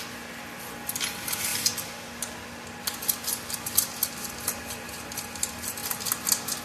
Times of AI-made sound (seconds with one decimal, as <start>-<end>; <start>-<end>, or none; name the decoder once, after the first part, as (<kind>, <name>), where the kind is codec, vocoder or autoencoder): none